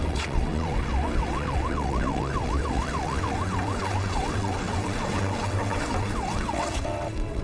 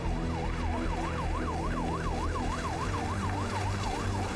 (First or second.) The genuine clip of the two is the second